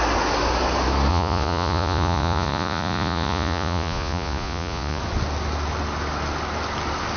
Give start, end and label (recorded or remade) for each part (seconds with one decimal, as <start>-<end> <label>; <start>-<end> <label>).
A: 0.0-1.1 recorded; 1.1-5.0 remade; 5.0-7.2 recorded